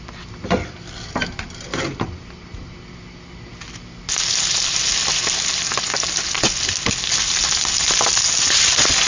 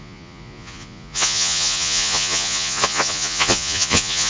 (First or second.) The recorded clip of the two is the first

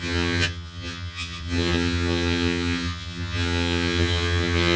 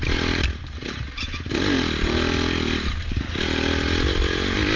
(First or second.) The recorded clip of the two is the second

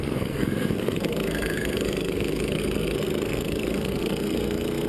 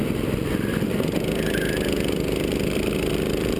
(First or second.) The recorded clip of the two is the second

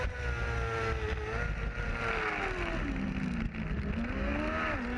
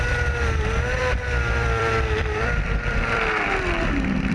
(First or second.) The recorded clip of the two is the first